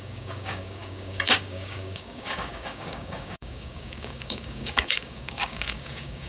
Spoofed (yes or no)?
yes